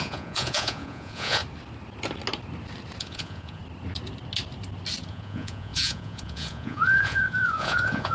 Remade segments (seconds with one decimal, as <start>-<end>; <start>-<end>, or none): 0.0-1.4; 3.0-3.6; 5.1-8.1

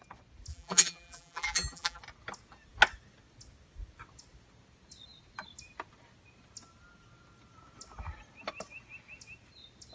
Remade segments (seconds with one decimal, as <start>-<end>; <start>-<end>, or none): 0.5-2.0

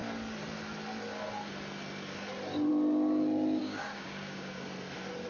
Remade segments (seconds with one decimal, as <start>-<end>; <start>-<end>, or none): 3.6-4.6

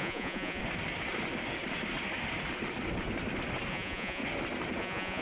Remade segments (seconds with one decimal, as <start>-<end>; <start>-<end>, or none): 0.0-0.6; 3.7-4.2; 4.8-5.2

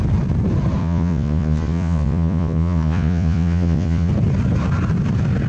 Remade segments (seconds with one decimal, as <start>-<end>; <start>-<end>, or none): 0.8-4.1

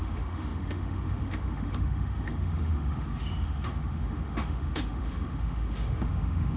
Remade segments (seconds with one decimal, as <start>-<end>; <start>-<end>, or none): 0.0-6.6

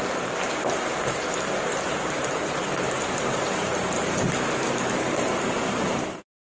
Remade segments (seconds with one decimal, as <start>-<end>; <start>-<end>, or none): 1.9-5.9

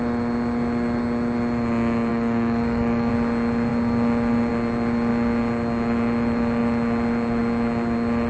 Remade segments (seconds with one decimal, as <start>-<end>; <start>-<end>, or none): 2.1-3.1